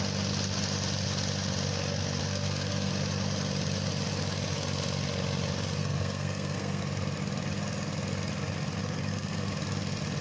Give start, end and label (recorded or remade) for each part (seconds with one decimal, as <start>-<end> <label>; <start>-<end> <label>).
0.0-2.2 recorded; 2.2-2.9 remade; 2.9-5.8 recorded; 5.8-6.8 remade; 6.8-8.8 recorded; 8.8-9.5 remade; 9.5-10.2 recorded